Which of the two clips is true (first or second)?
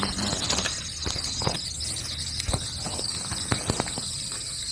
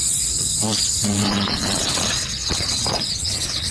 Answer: first